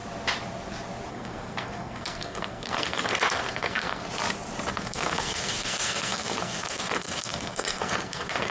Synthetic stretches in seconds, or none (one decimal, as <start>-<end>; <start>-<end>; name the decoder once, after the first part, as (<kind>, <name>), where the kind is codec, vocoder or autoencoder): 1.1-4.0 (codec, SNAC); 4.7-8.5